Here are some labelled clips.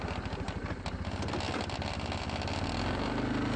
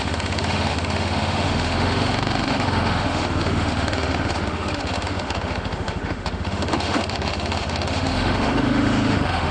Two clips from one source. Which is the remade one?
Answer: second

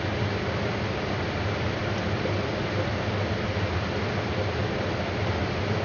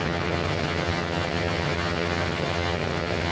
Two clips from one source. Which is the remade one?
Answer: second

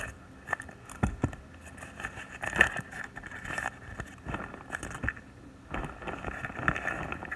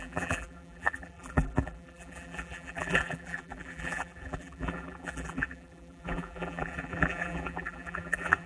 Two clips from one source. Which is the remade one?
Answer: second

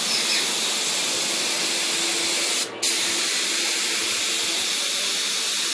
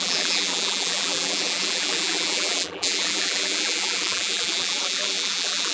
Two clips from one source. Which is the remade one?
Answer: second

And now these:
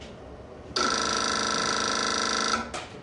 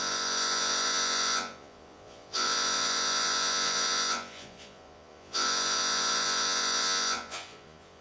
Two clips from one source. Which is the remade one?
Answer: second